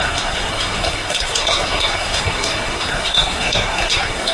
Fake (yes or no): yes